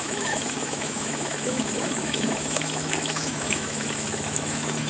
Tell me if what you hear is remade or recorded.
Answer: remade